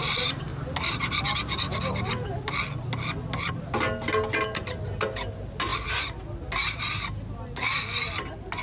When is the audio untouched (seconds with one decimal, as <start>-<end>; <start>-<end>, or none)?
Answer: 0.0-8.6